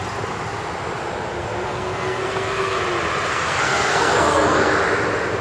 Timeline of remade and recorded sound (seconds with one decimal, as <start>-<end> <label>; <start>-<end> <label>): 0.0-1.4 recorded; 1.4-2.8 remade; 2.8-3.3 recorded; 3.3-4.7 remade; 4.7-5.4 recorded